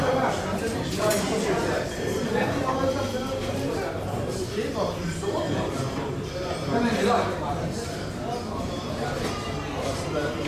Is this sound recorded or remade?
remade